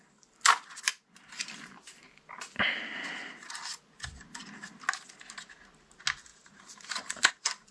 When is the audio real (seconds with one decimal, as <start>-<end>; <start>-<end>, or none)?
0.0-6.3; 7.3-7.7

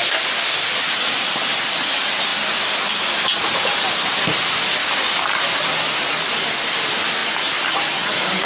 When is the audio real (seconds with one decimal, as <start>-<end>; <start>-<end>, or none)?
2.3-6.3

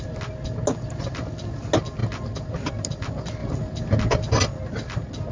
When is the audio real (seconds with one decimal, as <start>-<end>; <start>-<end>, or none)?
0.0-5.3

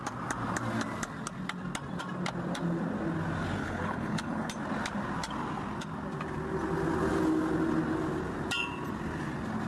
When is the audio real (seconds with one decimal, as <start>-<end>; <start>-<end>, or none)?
0.0-3.6; 4.5-9.7

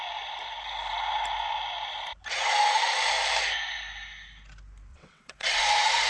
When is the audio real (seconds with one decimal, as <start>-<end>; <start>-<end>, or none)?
0.0-4.9; 5.6-6.1

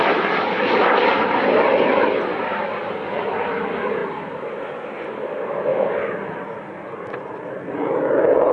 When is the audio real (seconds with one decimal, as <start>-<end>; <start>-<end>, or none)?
0.0-8.5

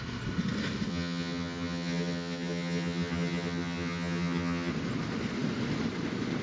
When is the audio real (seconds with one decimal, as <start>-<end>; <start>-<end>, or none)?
0.0-0.9; 4.7-6.4